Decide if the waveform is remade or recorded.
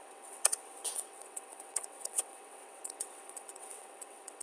remade